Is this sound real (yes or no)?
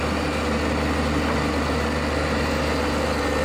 yes